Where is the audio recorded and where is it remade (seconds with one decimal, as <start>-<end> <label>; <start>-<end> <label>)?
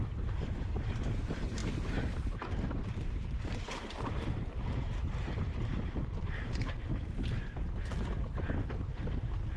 0.0-1.6 recorded; 1.6-6.9 remade; 6.9-9.6 recorded